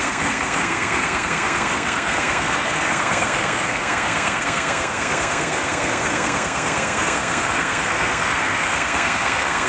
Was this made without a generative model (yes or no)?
no